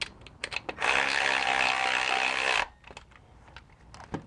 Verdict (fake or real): real